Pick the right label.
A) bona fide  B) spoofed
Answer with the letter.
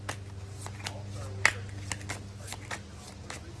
A